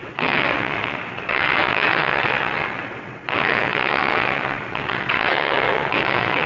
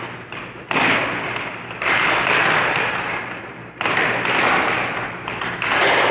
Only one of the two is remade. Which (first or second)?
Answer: first